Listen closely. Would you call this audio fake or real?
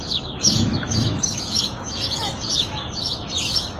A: fake